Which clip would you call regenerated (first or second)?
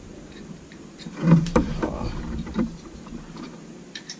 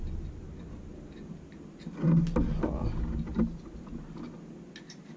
first